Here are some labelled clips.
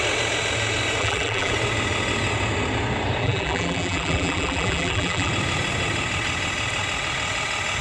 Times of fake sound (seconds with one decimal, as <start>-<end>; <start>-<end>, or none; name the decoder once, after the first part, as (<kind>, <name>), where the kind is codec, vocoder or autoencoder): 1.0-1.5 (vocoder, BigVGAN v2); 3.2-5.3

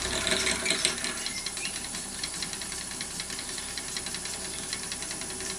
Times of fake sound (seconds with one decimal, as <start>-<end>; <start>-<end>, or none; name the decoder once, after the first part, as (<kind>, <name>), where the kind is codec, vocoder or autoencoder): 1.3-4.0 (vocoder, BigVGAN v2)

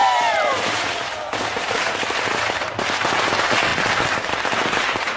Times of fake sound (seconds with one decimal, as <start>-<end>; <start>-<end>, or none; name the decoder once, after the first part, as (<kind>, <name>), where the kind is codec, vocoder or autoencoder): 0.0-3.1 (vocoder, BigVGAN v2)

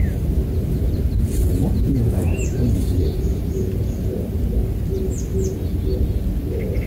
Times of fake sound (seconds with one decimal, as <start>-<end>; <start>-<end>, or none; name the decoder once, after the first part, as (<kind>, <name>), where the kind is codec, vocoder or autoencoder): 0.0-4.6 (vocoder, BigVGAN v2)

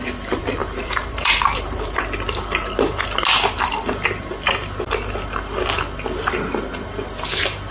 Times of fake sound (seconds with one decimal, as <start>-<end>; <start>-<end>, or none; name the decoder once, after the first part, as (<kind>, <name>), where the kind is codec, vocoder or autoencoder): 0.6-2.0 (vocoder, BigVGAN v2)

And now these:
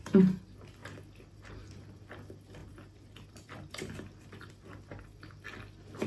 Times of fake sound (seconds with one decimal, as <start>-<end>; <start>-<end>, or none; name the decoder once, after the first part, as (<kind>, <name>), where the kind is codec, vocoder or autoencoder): 2.6-4.5 (vocoder, BigVGAN v2)